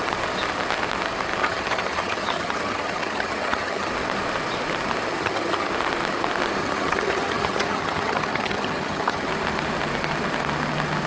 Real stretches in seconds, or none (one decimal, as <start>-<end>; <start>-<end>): 0.0-1.4; 3.9-5.1; 5.7-6.6; 9.3-11.1